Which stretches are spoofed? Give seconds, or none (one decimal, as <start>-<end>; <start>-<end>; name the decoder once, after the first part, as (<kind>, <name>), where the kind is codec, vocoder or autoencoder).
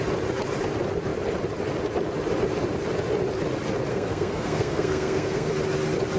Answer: 3.9-5.5 (codec, SNAC)